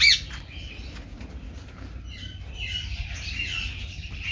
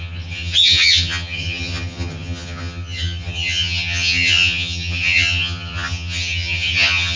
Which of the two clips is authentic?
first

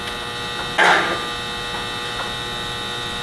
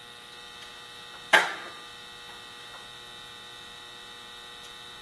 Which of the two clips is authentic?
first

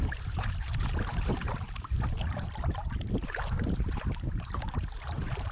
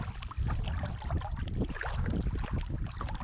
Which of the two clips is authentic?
second